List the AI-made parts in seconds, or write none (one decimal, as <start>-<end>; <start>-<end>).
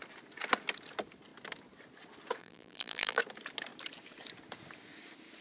2.4-3.2